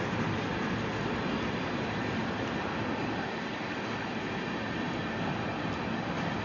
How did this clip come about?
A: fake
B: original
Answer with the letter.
B